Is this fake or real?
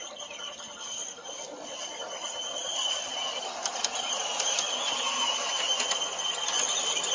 real